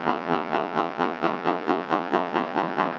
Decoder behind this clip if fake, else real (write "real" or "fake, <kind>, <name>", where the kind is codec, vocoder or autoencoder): fake, vocoder, Vocos